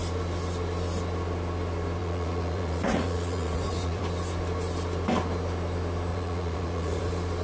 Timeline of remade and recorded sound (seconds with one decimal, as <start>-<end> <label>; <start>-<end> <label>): 0.0-2.0 recorded; 2.0-4.0 remade; 4.0-6.1 recorded; 6.1-7.0 remade; 7.0-7.4 recorded